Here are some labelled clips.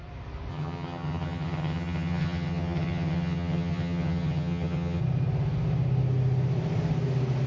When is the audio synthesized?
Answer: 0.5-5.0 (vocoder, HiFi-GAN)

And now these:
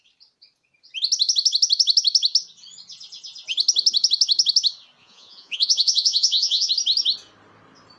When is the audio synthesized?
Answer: 5.0-6.7 (vocoder, Vocos)